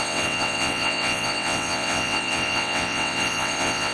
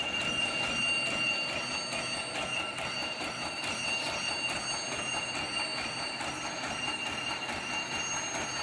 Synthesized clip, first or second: first